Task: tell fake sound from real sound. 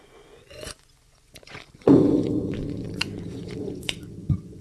fake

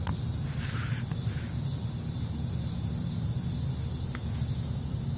real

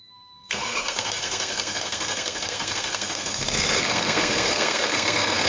fake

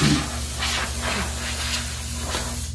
real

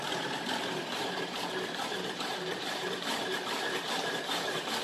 fake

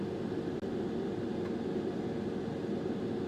real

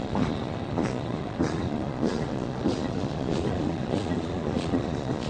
fake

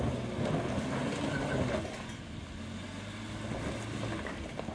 real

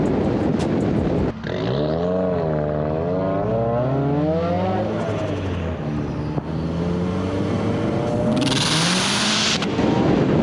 real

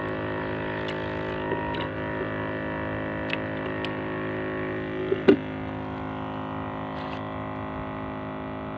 real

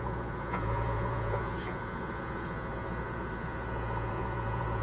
fake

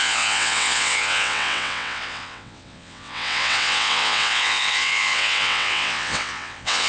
fake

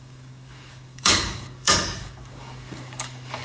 fake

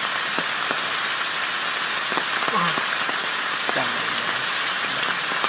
real